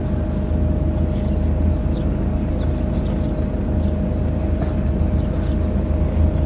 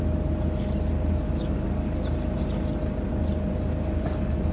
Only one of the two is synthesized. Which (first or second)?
second